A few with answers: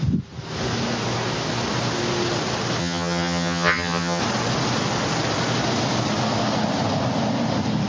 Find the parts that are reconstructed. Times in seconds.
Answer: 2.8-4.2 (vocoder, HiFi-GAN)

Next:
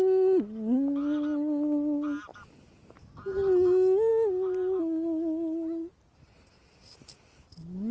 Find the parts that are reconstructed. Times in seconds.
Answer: none